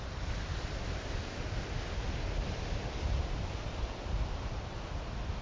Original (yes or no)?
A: yes